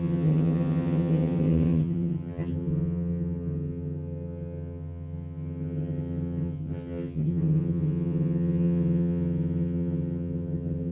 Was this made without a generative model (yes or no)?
no